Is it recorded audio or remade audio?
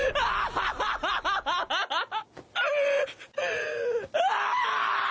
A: recorded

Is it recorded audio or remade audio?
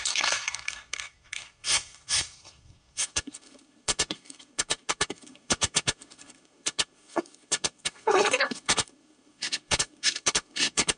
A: remade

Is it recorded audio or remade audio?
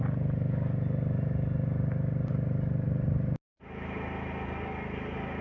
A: recorded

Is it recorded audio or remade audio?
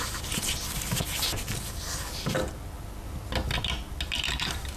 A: recorded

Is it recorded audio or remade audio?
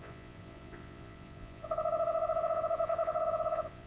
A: remade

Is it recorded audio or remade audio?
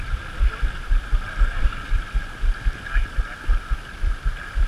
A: recorded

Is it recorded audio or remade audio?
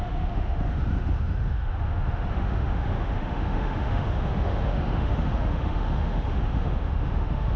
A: remade